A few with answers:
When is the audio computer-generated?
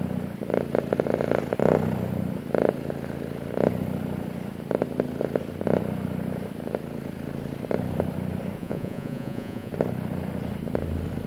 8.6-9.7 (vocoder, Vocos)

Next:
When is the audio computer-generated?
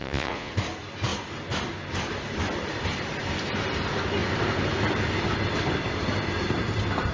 0.0-0.5 (vocoder, Vocos)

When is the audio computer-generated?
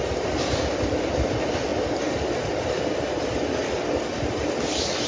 none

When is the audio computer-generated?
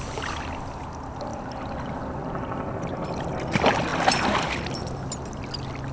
none